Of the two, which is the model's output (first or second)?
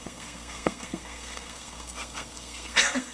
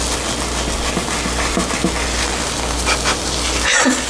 first